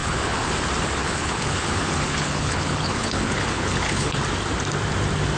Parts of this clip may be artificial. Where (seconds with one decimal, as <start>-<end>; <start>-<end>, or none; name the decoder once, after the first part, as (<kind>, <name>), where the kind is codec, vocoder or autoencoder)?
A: 0.0-0.5 (codec, HILCodec); 1.0-4.2